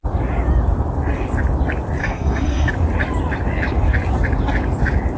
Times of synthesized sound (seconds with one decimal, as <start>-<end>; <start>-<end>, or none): 2.0-2.7